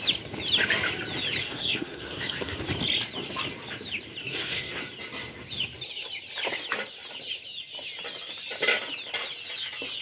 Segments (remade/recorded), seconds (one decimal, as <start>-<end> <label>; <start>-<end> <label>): 0.0-1.4 recorded; 1.4-2.6 remade; 2.6-4.2 recorded; 4.2-4.8 remade; 4.8-10.0 recorded